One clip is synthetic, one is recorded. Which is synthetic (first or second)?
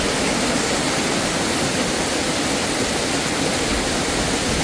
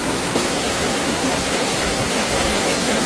second